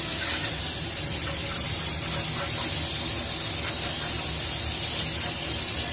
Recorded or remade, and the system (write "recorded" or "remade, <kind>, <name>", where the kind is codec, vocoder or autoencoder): recorded